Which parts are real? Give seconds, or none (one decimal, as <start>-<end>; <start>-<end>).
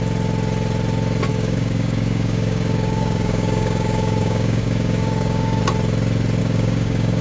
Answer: 0.0-1.3; 5.6-6.4